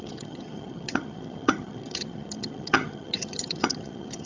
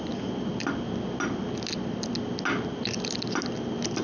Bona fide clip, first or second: second